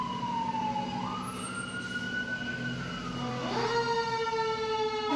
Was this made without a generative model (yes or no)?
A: yes